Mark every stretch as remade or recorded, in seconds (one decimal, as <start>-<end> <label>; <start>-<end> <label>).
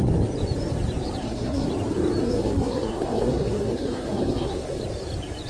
0.0-1.2 recorded; 1.2-1.7 remade; 1.7-2.2 recorded; 2.2-4.8 remade; 4.8-5.5 recorded